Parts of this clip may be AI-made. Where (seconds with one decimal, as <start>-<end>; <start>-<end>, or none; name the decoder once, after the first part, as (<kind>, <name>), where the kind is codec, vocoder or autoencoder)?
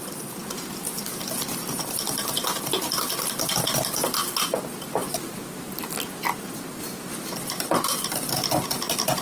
none